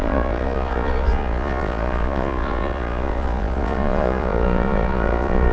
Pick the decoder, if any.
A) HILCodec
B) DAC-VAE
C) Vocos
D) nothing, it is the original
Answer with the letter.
C